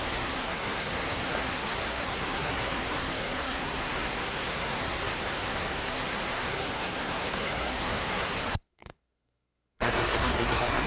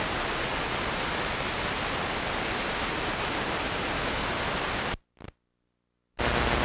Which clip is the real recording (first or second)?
second